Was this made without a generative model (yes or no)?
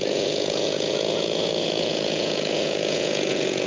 no